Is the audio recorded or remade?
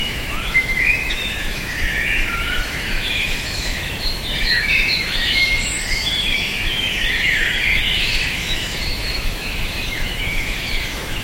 remade